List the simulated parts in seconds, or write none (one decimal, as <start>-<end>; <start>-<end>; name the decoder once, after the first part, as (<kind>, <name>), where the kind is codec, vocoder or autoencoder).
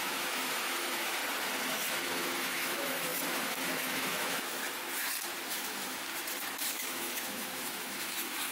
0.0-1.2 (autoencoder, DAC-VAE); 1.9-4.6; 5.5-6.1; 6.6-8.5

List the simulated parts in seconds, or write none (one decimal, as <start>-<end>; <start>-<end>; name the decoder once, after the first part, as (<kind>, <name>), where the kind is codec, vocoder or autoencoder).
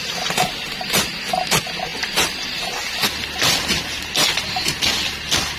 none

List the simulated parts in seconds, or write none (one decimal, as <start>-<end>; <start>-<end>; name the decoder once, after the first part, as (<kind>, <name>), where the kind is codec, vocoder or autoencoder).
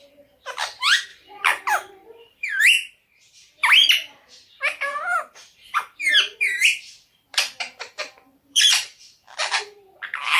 1.1-2.6 (vocoder, BigVGAN v2); 4.9-9.6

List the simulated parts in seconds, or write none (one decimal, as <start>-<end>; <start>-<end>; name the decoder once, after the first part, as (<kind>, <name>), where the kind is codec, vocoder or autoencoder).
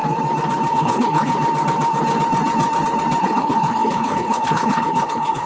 0.7-1.3 (codec, HILCodec); 3.2-5.5